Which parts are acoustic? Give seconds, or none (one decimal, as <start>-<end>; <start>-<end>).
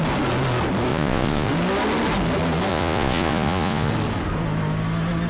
0.0-0.9; 1.5-2.7; 3.9-5.3